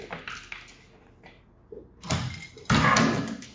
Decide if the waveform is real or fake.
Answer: real